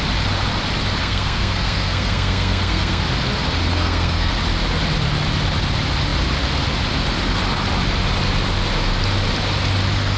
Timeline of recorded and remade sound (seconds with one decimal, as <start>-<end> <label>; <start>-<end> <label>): 0.0-1.0 recorded; 1.0-3.0 remade; 3.0-3.7 recorded; 3.7-4.3 remade; 4.3-10.2 recorded